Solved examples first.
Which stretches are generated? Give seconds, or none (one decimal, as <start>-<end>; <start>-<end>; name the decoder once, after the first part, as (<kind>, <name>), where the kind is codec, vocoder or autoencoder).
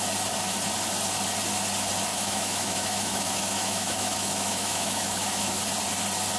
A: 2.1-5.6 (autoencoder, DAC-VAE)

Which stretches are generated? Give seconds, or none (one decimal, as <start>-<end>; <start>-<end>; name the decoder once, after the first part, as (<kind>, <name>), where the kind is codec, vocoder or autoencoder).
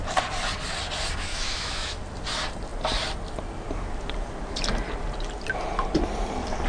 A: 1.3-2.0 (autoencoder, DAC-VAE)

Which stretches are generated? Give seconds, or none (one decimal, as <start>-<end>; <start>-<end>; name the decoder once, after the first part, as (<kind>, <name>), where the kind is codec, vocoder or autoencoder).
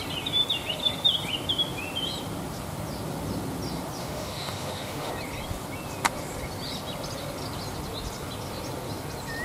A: 4.0-5.1 (autoencoder, DAC-VAE)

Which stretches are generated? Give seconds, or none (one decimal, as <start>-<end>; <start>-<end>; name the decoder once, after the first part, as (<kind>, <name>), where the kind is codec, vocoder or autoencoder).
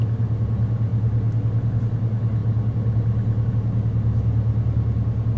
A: none